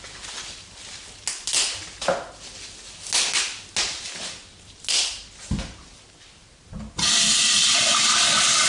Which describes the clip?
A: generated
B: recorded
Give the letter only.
B